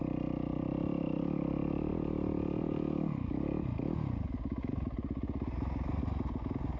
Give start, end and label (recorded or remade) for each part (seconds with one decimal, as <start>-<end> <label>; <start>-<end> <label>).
0.0-6.8 recorded